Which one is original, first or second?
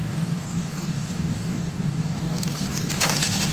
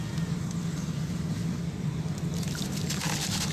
second